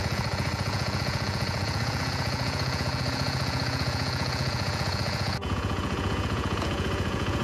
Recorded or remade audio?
remade